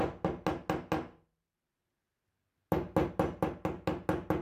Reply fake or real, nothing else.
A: real